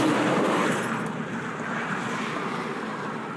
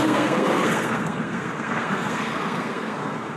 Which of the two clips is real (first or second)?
first